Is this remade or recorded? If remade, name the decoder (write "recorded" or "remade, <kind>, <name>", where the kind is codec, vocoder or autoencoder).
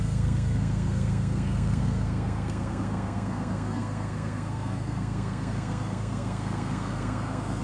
remade, codec, SNAC